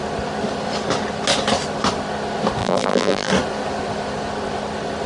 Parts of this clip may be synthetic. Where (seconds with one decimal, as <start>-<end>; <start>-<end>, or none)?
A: 2.6-3.3